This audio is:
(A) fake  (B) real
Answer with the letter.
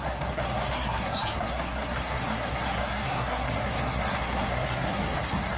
A